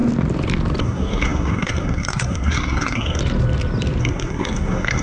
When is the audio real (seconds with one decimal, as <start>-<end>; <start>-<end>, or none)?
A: 0.0-0.8; 3.2-4.0